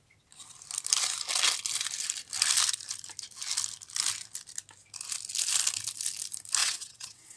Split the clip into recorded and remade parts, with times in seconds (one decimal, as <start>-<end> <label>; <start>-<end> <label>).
0.0-6.6 recorded; 6.6-7.4 remade